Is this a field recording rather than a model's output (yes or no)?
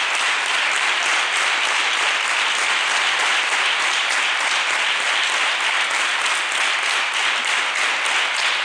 yes